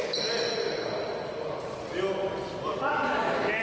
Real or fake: real